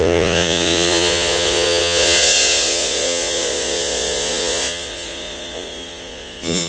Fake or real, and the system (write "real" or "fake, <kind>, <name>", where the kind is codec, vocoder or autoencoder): fake, vocoder, Vocos